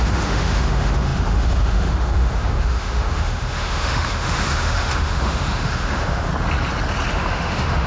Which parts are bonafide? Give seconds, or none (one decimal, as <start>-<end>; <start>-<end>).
6.3-7.1